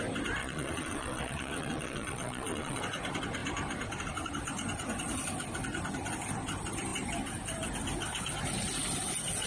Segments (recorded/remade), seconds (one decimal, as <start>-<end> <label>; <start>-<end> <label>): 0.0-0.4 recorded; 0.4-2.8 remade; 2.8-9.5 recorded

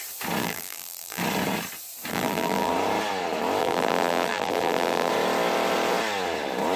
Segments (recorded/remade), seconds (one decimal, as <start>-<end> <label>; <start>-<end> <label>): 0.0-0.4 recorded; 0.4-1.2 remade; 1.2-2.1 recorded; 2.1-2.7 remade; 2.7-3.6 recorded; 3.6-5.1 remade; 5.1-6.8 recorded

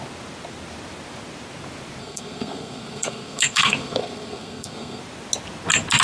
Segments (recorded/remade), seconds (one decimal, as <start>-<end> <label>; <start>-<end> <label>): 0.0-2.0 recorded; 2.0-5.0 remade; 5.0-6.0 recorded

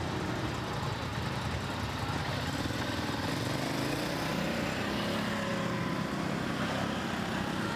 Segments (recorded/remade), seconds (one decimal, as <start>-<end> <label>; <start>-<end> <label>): 0.0-1.1 remade; 1.1-3.3 recorded; 3.3-5.5 remade; 5.5-6.3 recorded; 6.3-7.8 remade